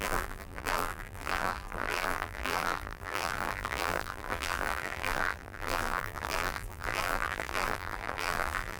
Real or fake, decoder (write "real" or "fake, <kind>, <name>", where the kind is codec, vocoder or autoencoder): fake, vocoder, BigVGAN v2